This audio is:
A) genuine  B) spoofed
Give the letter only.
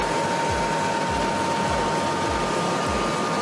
A